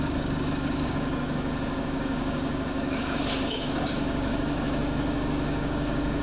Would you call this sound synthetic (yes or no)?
yes